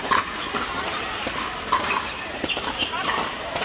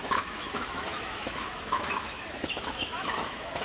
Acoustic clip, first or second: first